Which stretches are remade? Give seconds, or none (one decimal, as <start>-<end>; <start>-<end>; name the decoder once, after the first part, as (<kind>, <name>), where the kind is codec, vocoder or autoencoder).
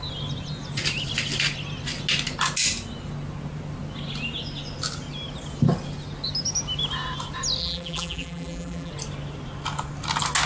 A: 7.6-8.9 (vocoder, BigVGAN v2)